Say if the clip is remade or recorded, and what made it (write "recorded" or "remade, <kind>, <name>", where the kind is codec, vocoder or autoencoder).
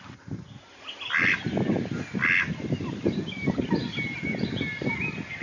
recorded